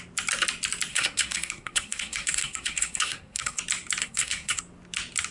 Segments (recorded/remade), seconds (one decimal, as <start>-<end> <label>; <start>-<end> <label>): 0.0-0.9 recorded; 0.9-3.6 remade; 3.6-4.0 recorded; 4.0-4.6 remade; 4.6-5.3 recorded